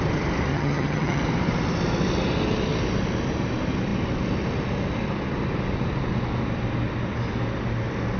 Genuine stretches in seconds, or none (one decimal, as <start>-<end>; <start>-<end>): 0.0-0.5; 1.2-8.2